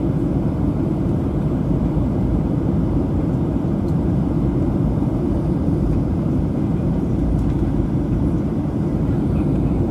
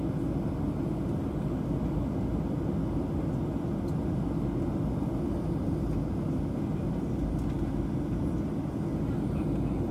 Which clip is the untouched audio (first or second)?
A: second